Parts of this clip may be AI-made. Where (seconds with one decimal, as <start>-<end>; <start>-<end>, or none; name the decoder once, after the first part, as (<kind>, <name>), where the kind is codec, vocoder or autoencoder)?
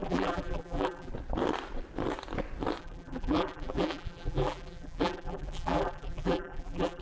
0.0-1.1 (vocoder, BigVGAN v2); 2.8-7.0